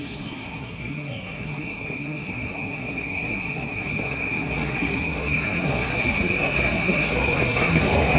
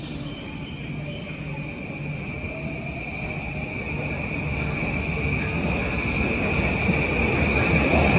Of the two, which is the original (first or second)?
second